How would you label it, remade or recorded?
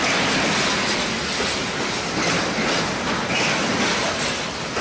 recorded